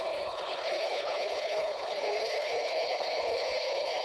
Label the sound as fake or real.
fake